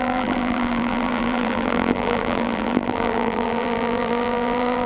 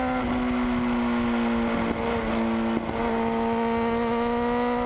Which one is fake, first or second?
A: first